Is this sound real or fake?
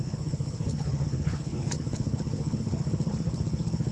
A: fake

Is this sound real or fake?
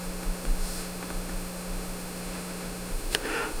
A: fake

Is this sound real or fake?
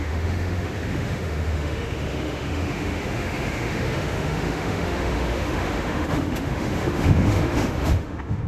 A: fake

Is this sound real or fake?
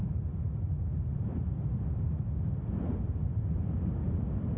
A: real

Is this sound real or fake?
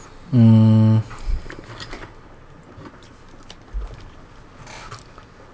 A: real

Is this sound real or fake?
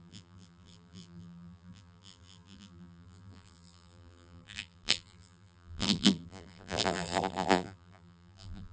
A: fake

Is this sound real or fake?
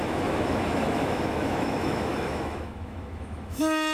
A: fake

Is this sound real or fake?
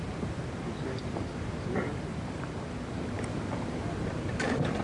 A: fake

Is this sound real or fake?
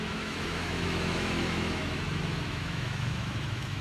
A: fake